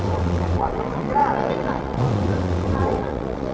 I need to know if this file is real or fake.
fake